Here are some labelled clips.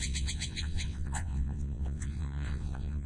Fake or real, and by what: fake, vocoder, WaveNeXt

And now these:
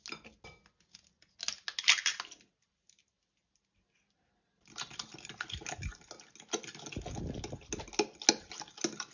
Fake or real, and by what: real